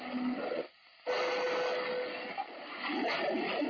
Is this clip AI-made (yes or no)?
no